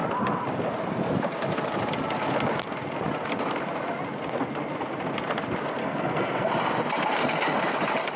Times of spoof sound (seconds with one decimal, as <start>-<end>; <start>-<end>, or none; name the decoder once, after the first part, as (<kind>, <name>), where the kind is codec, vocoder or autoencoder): 5.8-6.5 (codec, SNAC)